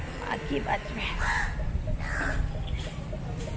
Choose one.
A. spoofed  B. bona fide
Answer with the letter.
B